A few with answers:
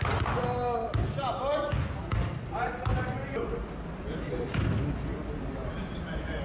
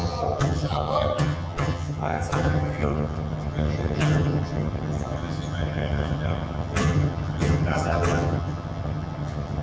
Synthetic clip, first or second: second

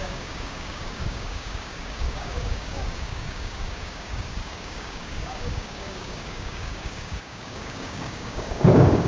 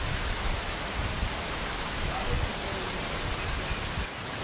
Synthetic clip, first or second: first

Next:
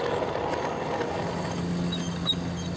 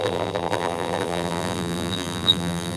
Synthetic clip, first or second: second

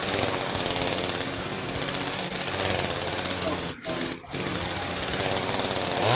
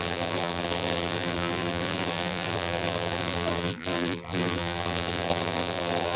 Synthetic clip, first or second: second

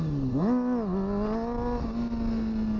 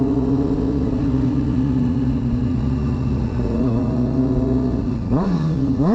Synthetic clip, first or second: second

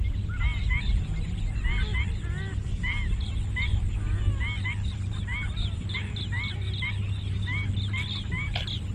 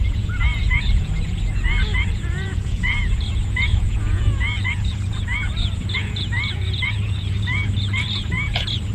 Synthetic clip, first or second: second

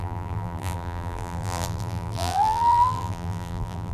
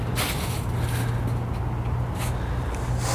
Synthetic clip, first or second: first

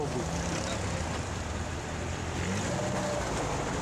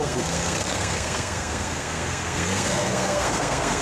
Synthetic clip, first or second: second